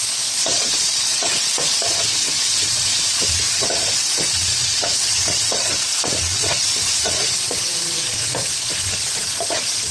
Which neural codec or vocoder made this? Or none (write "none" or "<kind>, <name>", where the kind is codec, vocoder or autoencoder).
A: vocoder, Vocos